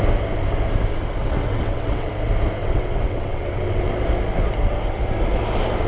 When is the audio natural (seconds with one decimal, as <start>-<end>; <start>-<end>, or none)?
0.0-1.2; 2.1-2.6; 3.9-5.9

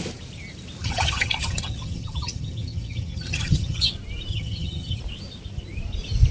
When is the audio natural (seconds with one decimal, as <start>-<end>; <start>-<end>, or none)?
0.0-0.8; 3.9-4.3; 5.0-6.3